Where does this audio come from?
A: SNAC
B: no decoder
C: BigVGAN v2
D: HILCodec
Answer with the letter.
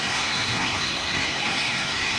A